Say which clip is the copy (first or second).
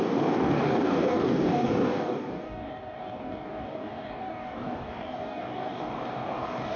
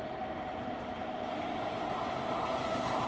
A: first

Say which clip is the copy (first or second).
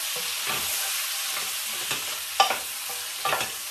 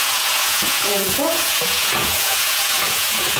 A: second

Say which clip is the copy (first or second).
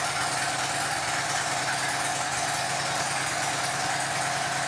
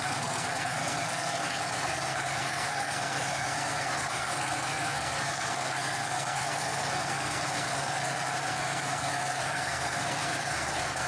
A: second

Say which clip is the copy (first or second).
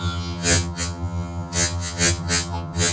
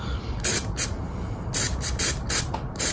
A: first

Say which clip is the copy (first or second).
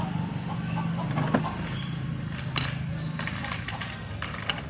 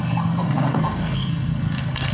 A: second